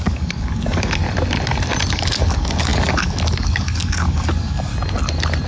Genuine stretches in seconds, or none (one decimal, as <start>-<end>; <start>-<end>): 1.0-1.9; 4.7-5.5